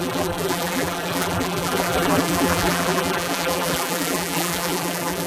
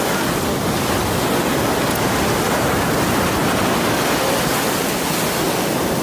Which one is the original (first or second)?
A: second